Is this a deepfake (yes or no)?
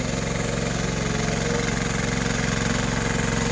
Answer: no